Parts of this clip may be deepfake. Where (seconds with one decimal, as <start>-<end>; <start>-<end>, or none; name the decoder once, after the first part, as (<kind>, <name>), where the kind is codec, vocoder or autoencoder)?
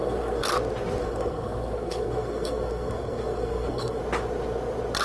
0.0-0.5 (codec, SNAC); 1.0-4.0